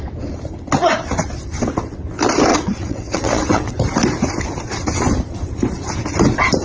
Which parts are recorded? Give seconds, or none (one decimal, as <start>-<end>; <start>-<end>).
0.0-2.5; 3.8-6.6